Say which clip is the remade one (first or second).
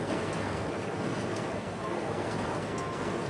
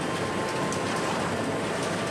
first